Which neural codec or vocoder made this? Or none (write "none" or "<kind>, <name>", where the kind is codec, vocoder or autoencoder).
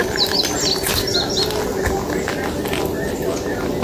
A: none